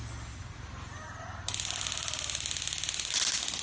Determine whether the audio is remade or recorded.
recorded